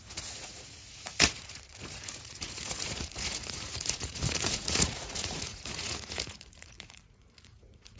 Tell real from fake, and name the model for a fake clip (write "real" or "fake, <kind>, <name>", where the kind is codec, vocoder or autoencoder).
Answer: fake, vocoder, Vocos